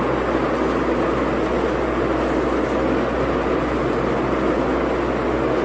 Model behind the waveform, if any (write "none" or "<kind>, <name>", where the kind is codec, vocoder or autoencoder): none